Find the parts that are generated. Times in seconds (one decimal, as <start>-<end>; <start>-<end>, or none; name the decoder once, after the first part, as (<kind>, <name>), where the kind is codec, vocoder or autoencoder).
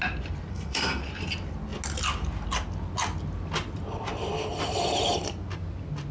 0.5-1.0 (codec, SNAC)